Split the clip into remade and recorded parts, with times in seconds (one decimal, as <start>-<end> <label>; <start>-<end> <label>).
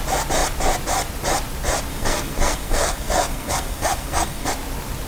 0.0-1.9 recorded; 1.9-4.5 remade; 4.5-5.1 recorded